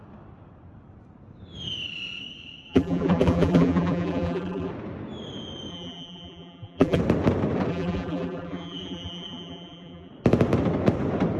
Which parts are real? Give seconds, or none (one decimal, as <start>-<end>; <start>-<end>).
0.0-2.7; 4.7-5.7; 7.0-7.7; 10.1-11.4